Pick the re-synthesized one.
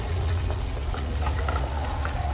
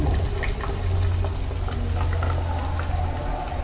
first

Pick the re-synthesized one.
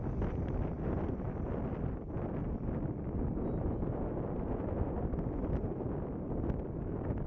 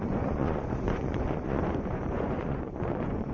second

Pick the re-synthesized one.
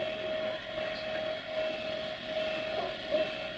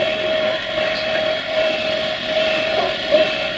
second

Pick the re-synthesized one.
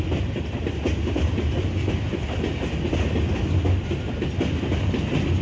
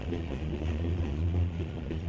second